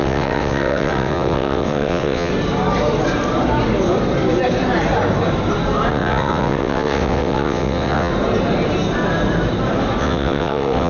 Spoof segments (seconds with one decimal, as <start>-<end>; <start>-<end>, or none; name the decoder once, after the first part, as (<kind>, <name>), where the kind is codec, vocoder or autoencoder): 0.0-2.3 (vocoder, WaveNeXt); 5.9-8.1; 10.0-10.9